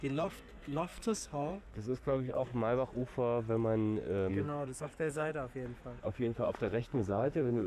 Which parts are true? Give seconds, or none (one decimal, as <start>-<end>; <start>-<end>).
2.5-4.3; 5.3-6.0